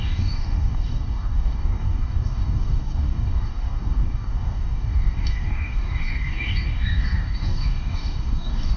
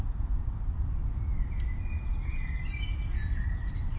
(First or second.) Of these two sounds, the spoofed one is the first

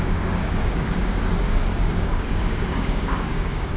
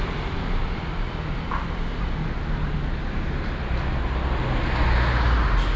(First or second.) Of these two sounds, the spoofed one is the first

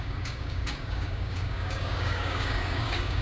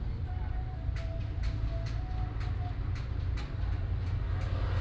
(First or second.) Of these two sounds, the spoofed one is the first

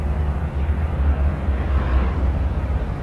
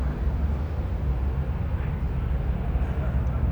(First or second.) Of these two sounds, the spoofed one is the first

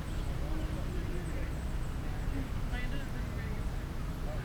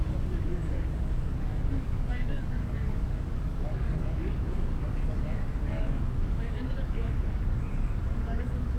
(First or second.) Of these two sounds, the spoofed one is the second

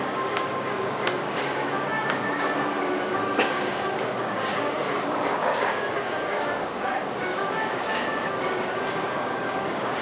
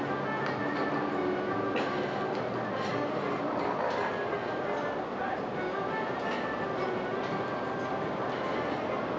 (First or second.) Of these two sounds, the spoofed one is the first